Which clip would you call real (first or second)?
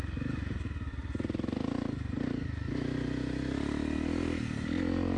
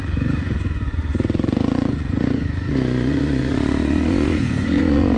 first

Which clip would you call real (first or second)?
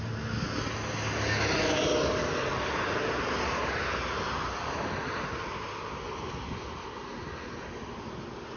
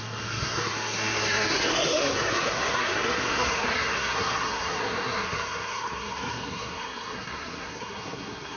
first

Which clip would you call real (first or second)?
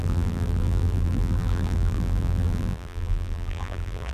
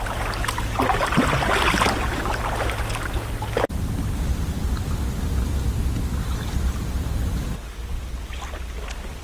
second